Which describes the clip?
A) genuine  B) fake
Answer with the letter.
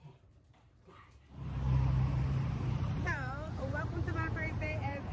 B